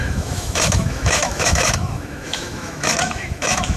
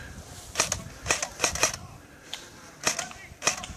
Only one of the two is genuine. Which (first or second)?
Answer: second